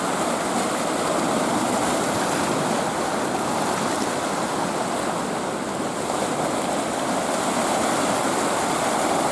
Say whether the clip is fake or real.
real